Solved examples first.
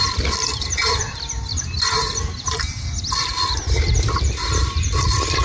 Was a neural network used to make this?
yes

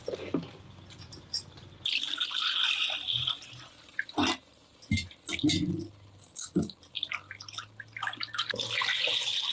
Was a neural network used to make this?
no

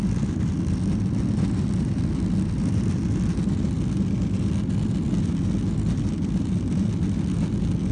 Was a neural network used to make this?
no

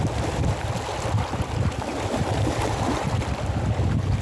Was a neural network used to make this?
yes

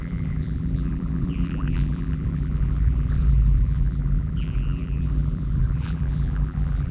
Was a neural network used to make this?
yes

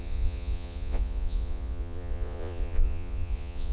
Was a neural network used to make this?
yes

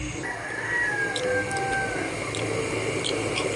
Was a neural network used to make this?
no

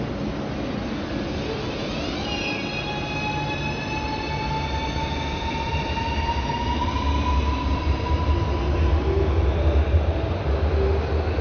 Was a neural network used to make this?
no